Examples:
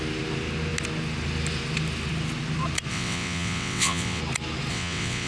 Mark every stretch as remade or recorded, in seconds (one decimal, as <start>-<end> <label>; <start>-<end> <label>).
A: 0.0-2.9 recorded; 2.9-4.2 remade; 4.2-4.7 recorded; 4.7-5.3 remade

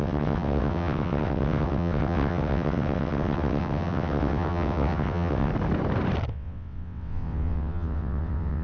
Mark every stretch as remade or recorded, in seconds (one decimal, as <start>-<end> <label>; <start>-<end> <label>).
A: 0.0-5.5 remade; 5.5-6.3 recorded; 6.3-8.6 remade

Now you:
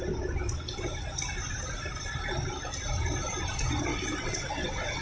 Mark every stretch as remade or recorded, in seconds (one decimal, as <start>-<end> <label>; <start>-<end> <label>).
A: 0.0-3.9 recorded; 3.9-5.0 remade

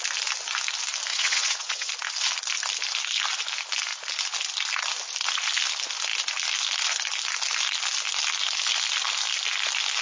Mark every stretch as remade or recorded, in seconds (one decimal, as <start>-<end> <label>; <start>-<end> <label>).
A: 0.0-1.1 recorded; 1.1-1.9 remade; 1.9-10.0 recorded